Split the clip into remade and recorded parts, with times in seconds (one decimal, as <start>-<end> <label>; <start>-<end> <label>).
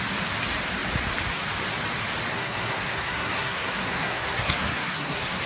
0.0-2.3 recorded; 2.3-5.5 remade